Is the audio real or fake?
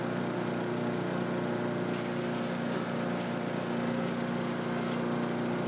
real